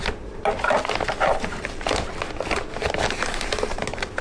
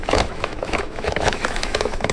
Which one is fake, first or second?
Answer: second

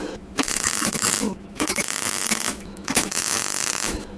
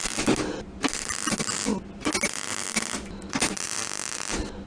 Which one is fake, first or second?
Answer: first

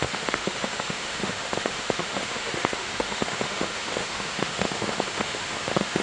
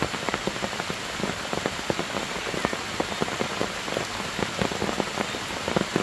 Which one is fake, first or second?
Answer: first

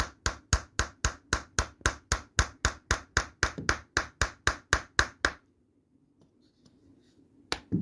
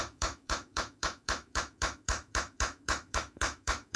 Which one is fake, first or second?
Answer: second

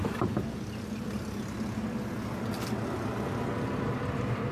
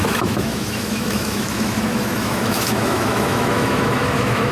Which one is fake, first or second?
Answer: second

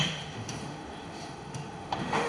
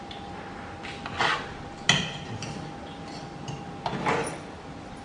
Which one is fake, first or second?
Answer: first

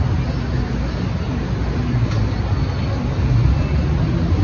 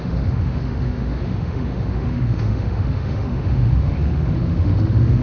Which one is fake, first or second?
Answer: second